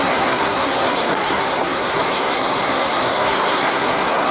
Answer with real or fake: fake